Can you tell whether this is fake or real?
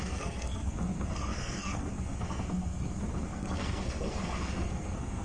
fake